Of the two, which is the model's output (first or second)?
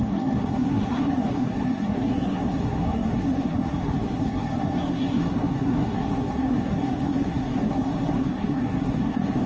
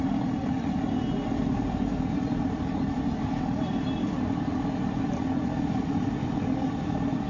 first